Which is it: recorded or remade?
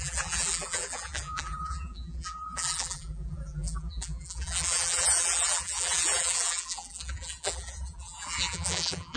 remade